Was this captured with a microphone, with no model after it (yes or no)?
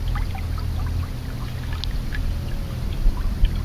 yes